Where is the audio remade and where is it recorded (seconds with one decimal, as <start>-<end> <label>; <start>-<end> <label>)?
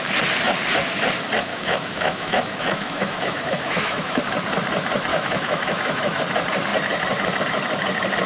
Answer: 0.0-1.5 recorded; 1.5-4.2 remade; 4.2-5.1 recorded; 5.1-6.2 remade; 6.2-8.3 recorded